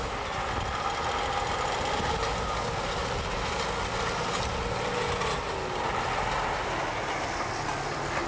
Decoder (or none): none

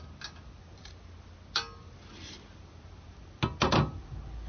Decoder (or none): none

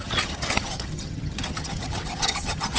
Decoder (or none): vocoder, HiFi-GAN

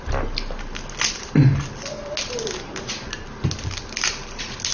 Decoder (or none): none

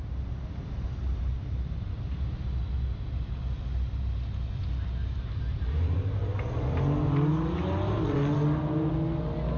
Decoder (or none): none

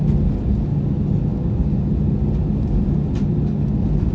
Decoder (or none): none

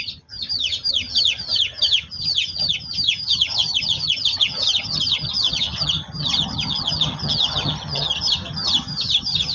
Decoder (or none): vocoder, HiFi-GAN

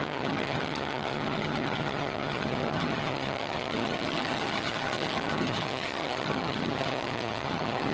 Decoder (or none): vocoder, HiFi-GAN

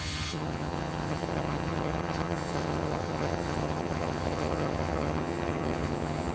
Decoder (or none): vocoder, HiFi-GAN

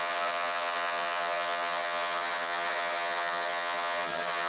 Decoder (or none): vocoder, HiFi-GAN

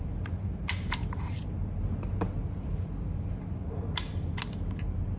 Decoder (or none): none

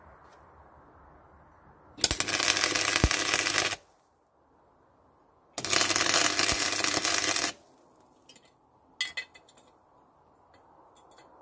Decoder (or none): none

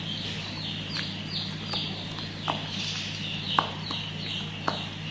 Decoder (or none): none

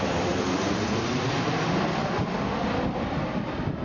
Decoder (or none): none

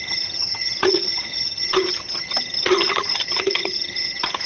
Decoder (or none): vocoder, HiFi-GAN